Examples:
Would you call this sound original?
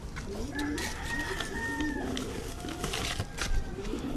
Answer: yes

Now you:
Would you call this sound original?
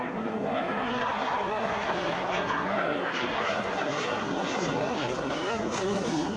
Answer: no